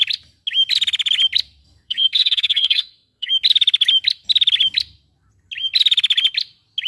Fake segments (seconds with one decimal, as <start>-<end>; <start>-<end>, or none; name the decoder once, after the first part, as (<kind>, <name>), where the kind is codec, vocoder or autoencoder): 1.6-3.3 (codec, SNAC)